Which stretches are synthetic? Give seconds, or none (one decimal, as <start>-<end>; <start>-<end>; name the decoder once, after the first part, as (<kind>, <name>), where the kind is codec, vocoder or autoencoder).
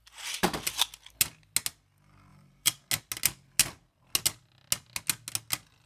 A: 2.3-2.9 (vocoder, BigVGAN v2)